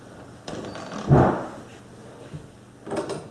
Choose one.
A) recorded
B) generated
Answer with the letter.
A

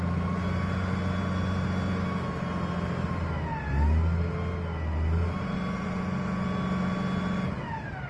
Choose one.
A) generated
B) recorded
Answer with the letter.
B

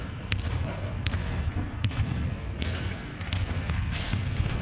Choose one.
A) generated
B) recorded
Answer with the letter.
A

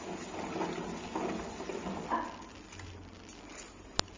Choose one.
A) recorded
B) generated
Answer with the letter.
A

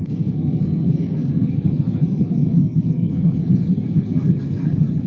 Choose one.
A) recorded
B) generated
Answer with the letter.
B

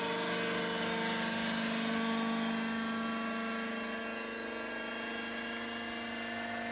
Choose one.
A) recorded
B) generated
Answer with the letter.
A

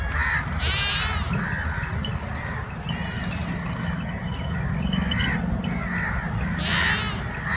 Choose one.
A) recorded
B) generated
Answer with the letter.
A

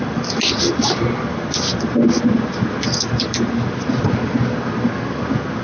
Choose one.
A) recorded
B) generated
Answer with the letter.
A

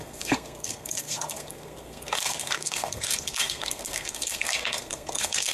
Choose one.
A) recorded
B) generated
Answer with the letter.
B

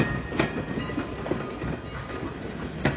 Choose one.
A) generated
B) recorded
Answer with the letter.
B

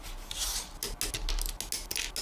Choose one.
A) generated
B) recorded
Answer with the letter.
B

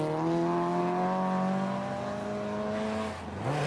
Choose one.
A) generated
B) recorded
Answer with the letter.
B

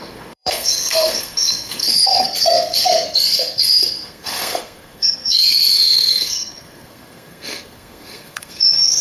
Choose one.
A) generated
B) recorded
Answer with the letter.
A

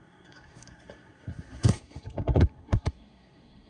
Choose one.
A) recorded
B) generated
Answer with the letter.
B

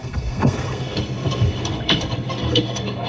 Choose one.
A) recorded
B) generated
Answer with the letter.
B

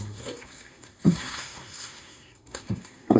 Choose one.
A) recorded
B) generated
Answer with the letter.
B